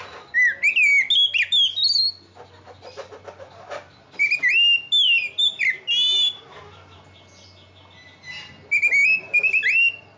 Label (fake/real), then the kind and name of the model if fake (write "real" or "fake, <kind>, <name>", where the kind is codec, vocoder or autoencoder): real